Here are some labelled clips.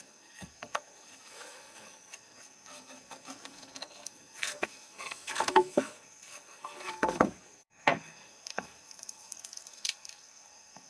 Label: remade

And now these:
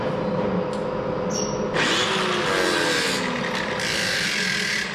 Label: recorded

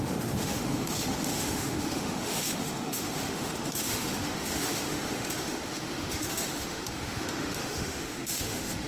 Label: remade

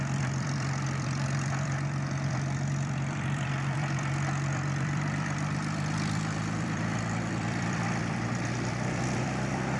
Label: remade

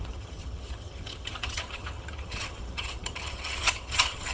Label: remade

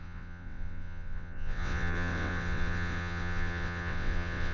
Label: remade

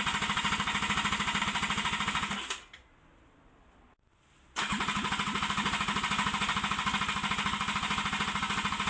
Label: recorded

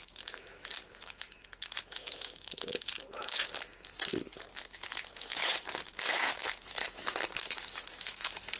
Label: remade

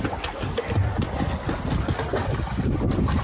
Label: recorded